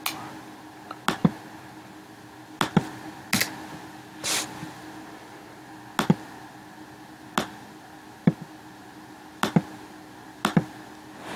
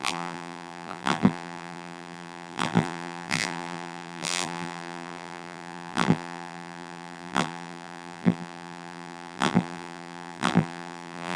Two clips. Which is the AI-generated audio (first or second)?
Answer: second